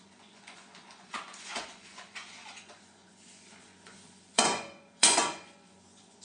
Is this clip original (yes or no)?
no